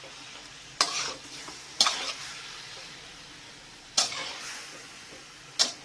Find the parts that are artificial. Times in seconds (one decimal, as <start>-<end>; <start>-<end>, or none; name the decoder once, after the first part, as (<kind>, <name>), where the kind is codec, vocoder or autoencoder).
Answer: 4.2-5.2 (vocoder, Vocos)